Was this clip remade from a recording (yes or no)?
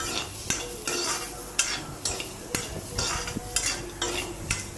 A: no